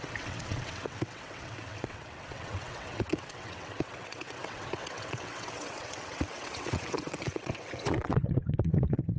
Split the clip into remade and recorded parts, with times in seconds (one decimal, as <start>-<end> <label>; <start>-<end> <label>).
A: 0.0-9.2 remade